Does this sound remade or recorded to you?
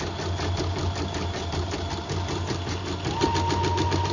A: recorded